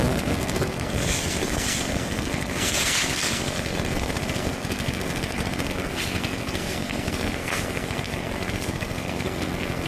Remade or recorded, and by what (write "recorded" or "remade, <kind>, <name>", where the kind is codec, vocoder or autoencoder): remade, codec, SNAC